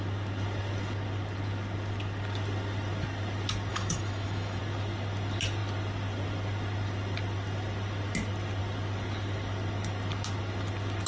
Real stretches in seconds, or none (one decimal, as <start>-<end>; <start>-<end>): 0.0-3.7; 4.6-11.1